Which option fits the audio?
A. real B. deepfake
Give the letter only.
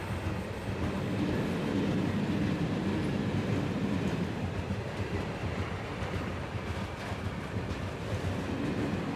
A